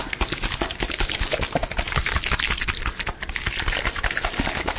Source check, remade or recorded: recorded